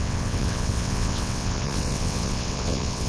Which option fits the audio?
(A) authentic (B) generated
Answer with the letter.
B